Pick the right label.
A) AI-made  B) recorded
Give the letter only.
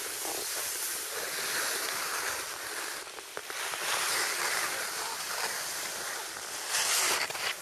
A